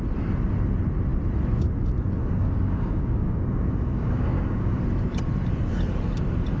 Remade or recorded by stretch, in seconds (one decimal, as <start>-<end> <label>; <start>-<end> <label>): 0.0-2.2 recorded; 2.2-4.8 remade; 4.8-6.6 recorded